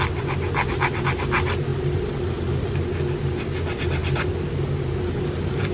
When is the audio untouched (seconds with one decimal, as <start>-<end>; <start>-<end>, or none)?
0.0-5.7